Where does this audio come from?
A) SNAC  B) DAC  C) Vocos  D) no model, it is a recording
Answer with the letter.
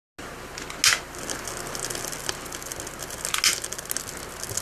D